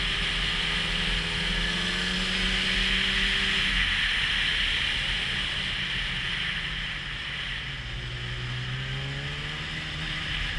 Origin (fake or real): real